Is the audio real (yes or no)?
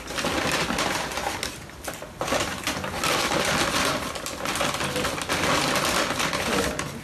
yes